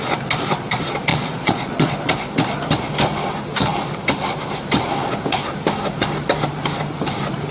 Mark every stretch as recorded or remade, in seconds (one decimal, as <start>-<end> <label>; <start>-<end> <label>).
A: 0.0-1.1 recorded; 1.1-1.9 remade; 1.9-7.5 recorded